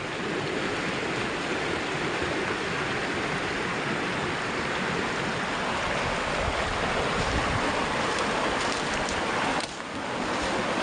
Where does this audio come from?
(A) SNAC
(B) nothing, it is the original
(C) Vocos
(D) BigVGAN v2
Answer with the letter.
B